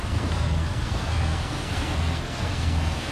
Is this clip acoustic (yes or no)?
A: no